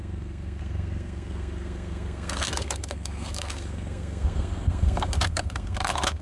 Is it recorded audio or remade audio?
remade